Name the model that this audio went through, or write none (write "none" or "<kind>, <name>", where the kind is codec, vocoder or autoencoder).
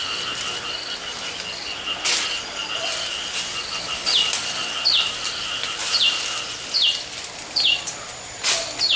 none